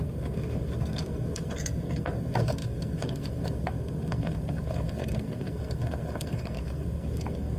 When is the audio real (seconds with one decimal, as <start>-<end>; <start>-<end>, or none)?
none

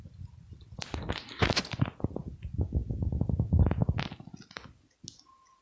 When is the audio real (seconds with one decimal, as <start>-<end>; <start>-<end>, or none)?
0.0-5.6

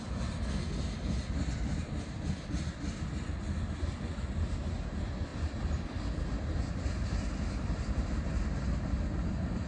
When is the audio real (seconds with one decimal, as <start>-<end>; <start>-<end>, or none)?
0.0-9.7

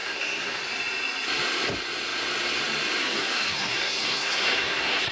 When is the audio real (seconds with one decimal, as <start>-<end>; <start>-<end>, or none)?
0.6-3.0

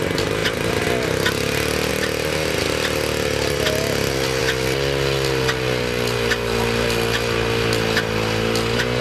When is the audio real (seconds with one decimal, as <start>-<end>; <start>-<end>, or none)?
0.0-9.0

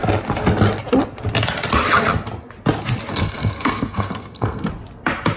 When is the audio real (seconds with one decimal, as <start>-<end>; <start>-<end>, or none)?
0.0-3.1; 4.7-5.4

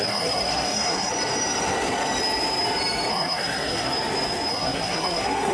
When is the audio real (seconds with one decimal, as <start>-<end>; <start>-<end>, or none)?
1.1-3.1; 3.9-4.5